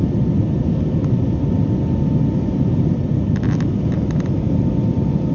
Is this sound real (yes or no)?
yes